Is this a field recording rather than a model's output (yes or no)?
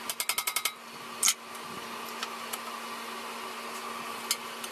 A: yes